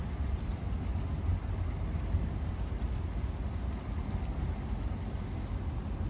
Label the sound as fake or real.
real